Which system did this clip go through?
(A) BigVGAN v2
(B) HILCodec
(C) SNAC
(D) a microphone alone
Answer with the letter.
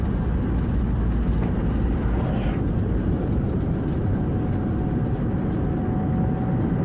D